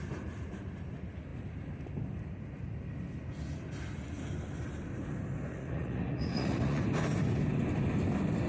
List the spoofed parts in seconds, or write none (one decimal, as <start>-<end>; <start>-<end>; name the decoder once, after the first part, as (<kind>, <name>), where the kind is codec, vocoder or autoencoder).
5.5-6.8 (vocoder, Vocos)